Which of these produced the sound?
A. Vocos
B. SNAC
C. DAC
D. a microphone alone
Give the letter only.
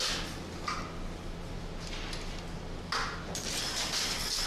D